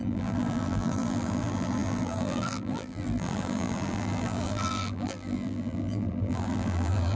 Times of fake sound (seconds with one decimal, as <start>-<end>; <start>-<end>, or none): 0.0-7.2